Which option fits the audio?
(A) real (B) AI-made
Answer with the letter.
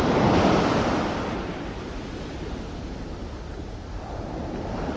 A